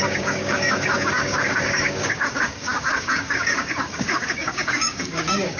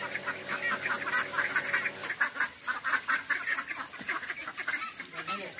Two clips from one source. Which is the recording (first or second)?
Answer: second